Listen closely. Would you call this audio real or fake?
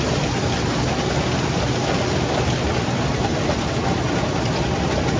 real